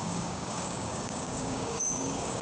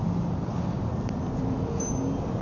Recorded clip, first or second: second